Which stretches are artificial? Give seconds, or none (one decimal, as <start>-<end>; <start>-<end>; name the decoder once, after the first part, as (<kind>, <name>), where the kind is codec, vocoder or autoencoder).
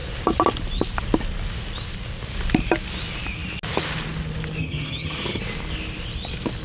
4.6-5.4 (vocoder, HiFi-GAN)